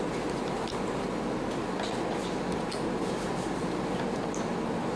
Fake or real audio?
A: real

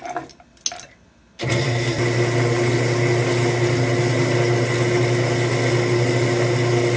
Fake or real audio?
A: real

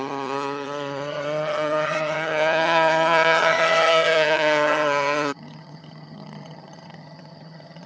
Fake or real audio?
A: fake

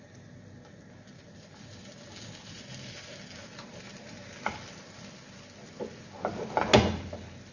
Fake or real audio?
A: real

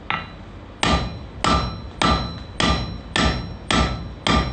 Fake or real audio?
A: real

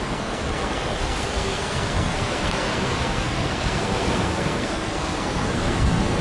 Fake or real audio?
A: fake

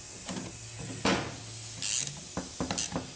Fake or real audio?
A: real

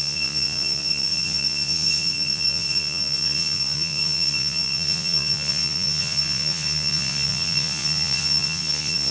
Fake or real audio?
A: fake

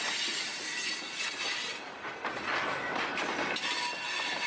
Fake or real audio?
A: real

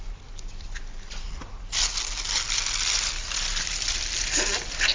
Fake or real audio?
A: real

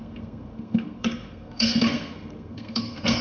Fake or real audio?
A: fake